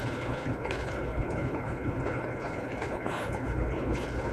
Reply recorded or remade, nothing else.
remade